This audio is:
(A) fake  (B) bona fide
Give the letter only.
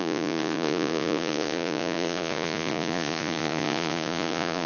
A